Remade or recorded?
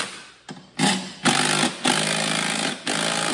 recorded